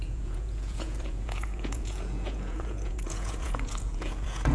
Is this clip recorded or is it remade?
remade